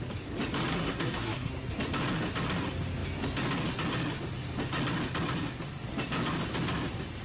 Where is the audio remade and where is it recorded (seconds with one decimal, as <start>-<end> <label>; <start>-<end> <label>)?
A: 0.0-0.7 recorded; 0.7-1.5 remade; 1.5-7.2 recorded